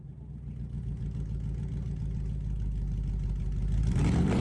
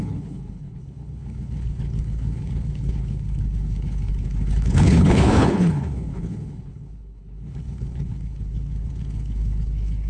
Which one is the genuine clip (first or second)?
first